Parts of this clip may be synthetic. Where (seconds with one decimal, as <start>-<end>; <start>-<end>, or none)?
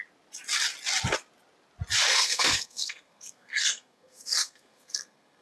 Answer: 2.1-5.4